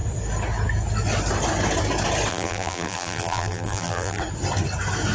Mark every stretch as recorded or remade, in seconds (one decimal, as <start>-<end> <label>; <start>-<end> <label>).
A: 0.0-2.3 recorded; 2.3-4.2 remade; 4.2-5.1 recorded